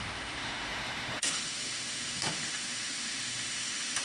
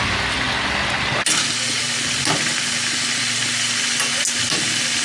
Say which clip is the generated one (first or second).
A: first